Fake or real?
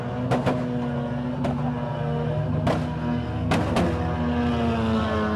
real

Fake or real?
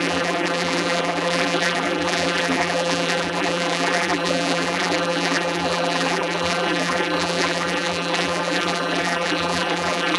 fake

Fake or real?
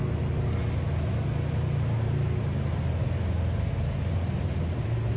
real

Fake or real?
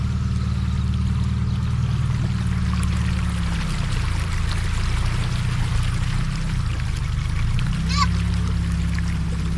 real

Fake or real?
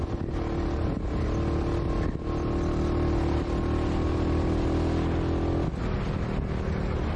real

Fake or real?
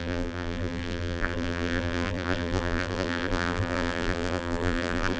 fake